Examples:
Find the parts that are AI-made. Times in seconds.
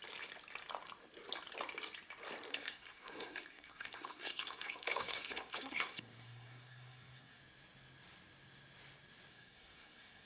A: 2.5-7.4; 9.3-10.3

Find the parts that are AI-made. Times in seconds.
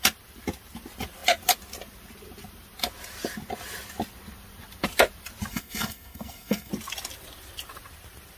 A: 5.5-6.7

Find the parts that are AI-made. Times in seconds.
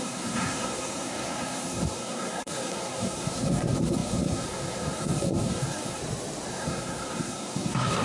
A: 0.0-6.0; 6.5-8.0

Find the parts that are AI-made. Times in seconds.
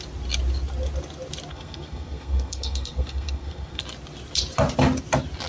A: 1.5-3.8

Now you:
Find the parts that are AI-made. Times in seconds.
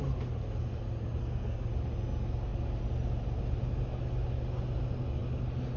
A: 1.2-1.7